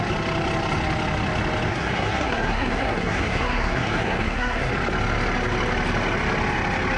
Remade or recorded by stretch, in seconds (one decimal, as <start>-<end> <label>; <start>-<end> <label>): 0.0-1.7 recorded; 1.7-4.7 remade; 4.7-7.0 recorded